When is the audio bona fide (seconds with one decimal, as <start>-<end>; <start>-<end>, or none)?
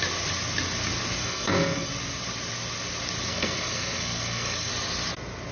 0.0-1.2; 1.9-3.3; 4.7-5.5